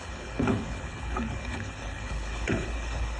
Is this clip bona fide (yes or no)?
no